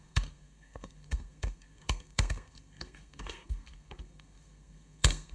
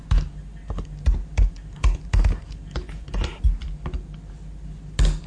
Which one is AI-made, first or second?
first